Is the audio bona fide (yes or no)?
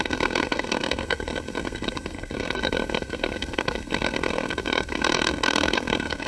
no